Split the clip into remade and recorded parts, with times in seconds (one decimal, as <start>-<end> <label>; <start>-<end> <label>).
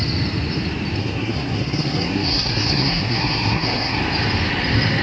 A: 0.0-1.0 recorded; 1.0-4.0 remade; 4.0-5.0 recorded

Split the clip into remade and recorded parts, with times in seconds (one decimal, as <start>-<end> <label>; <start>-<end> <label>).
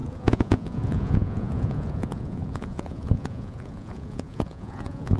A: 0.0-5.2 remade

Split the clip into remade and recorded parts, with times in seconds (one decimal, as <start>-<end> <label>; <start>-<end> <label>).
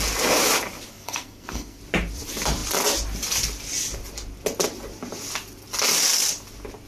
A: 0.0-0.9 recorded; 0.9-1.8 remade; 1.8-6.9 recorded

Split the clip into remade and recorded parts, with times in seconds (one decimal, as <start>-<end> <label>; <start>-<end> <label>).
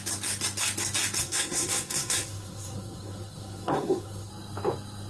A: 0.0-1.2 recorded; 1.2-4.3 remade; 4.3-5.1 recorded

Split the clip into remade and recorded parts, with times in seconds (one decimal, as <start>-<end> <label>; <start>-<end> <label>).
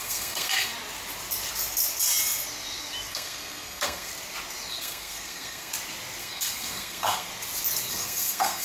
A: 0.0-0.7 remade; 0.7-3.1 recorded; 3.1-4.1 remade; 4.1-4.7 recorded; 4.7-5.7 remade; 5.7-6.2 recorded; 6.2-7.3 remade; 7.3-7.9 recorded; 7.9-8.6 remade